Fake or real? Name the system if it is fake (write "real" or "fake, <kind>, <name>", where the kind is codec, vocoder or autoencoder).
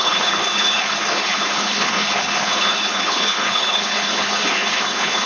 fake, codec, HILCodec